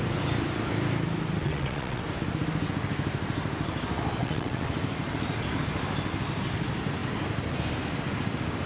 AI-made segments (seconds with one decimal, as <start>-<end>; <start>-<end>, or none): 1.4-2.0; 4.2-4.7